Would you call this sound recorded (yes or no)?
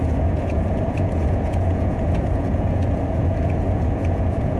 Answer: no